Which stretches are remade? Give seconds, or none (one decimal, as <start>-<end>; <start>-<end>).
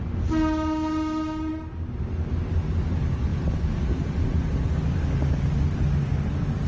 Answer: none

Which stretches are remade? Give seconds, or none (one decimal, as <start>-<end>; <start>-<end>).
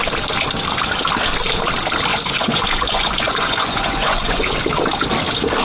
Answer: 2.1-4.6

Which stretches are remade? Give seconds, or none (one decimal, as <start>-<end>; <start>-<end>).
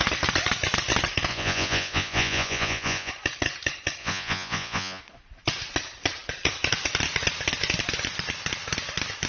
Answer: 1.3-3.1; 4.0-5.0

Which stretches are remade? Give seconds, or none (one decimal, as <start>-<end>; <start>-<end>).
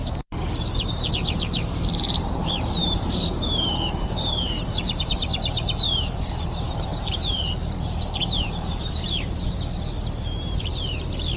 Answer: 0.0-11.4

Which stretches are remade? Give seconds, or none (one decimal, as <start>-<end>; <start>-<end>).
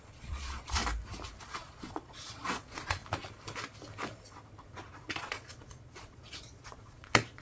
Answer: 0.0-0.8; 1.4-3.0; 4.5-7.4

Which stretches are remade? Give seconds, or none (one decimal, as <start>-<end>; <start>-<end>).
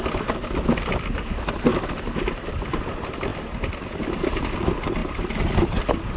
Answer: 1.7-2.7; 5.0-5.8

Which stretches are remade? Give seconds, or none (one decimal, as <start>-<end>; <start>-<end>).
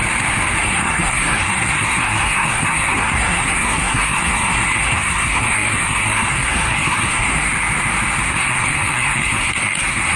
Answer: 0.6-7.5; 8.2-10.2